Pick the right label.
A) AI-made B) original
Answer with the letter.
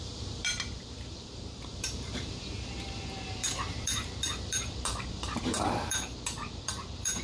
A